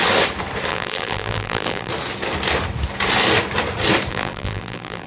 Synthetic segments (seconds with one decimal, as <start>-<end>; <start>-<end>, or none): 0.7-1.9; 4.1-5.1